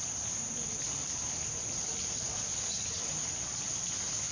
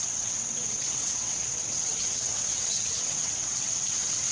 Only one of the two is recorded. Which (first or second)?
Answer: first